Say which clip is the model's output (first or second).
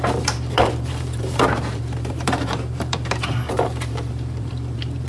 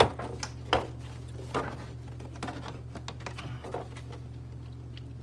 first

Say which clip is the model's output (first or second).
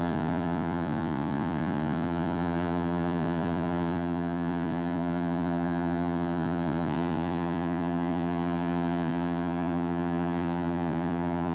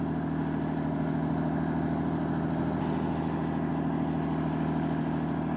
first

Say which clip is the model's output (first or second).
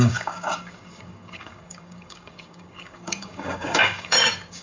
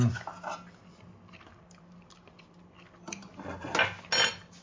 first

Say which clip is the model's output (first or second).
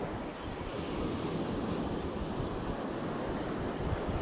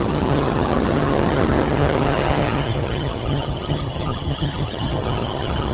second